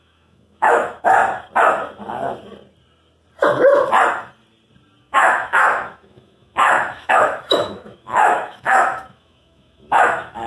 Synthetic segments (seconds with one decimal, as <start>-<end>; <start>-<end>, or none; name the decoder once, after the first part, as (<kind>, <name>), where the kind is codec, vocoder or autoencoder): 0.0-1.2 (autoencoder, DAC-VAE); 5.0-10.5